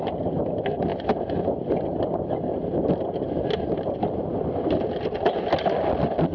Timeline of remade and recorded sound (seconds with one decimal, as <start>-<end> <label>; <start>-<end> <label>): 0.0-6.3 recorded